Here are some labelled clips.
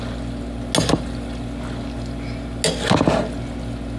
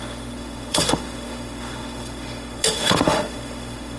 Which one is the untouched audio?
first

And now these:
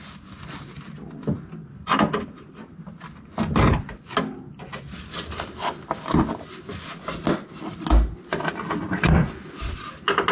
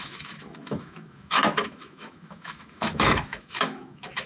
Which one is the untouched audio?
first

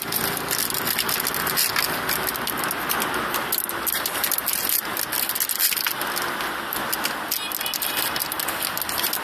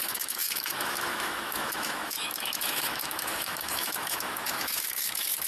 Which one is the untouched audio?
first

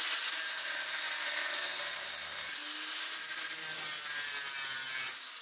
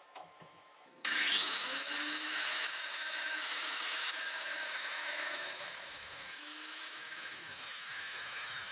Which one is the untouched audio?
first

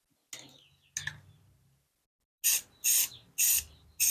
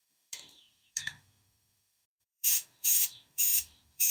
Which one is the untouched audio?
first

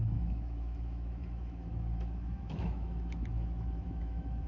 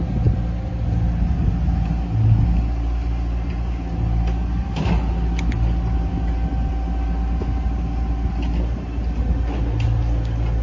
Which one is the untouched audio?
second